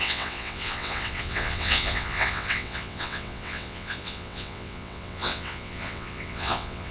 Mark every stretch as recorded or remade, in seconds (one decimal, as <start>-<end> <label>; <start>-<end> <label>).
0.0-6.9 remade